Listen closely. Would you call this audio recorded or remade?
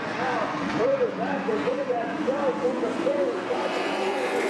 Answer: remade